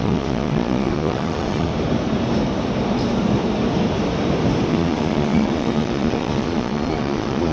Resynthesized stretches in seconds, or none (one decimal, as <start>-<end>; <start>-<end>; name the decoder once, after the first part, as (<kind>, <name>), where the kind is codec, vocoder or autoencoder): 0.0-1.7 (vocoder, Vocos); 4.7-7.5

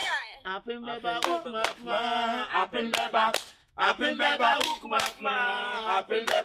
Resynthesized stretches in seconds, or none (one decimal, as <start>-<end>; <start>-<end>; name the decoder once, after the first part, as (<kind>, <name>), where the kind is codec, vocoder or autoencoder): 0.0-0.9 (autoencoder, DAC-VAE); 3.6-6.4

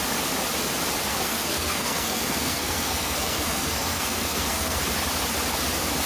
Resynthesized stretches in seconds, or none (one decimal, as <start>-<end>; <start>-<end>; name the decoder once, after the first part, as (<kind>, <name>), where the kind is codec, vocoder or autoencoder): 1.1-4.8 (codec, SNAC)